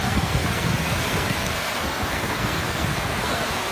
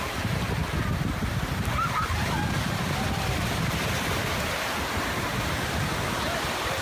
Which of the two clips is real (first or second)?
second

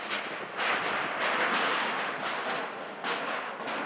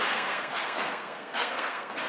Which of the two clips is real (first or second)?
first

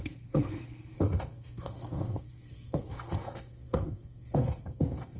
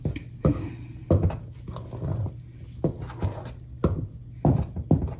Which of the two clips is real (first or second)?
second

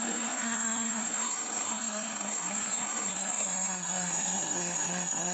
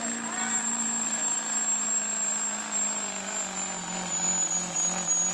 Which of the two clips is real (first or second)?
second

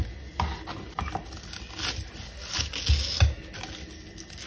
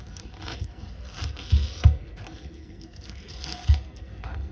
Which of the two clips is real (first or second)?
first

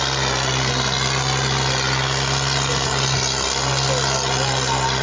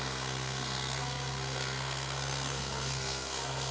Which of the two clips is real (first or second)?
first